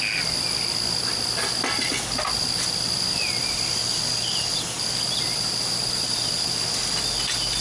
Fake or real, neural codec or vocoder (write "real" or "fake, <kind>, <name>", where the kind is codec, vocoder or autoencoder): real